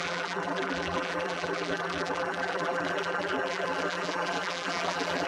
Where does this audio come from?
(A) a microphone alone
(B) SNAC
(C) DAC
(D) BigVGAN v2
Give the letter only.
D